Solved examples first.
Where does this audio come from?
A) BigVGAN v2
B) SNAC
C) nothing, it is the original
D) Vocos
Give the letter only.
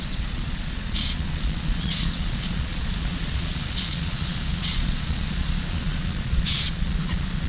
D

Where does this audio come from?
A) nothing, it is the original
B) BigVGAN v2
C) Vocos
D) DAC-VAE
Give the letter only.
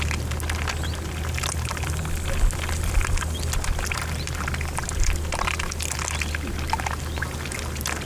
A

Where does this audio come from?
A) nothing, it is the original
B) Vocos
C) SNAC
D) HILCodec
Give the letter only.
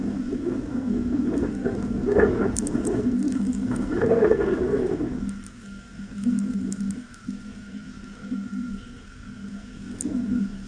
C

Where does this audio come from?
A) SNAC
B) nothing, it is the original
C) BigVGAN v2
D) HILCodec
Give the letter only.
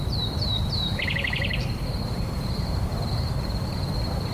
C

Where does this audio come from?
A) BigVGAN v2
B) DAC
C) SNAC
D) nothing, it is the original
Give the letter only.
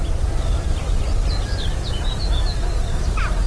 D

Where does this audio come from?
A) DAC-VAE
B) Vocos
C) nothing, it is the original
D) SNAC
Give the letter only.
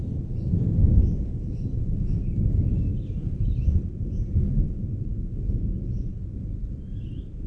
C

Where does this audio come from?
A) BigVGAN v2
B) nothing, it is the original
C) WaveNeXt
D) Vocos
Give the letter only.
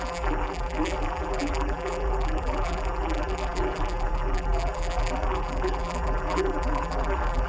A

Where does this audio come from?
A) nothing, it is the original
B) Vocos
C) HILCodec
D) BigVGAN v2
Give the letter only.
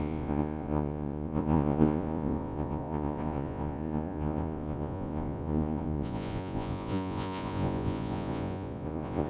B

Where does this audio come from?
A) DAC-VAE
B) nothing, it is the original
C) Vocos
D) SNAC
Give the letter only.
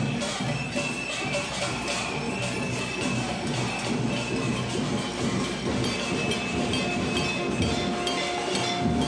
B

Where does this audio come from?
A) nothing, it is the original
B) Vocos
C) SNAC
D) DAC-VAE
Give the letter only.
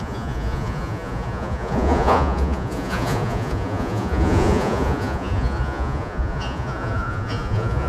B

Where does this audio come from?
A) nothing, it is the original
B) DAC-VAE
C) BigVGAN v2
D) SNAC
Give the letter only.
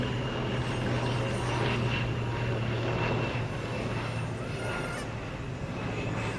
A